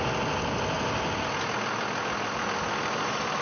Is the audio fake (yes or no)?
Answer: no